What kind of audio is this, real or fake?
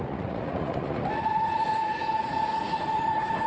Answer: fake